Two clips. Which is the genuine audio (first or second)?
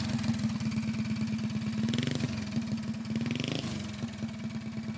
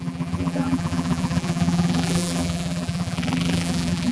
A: first